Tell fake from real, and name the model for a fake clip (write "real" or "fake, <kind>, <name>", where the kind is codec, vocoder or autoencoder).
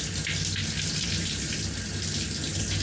real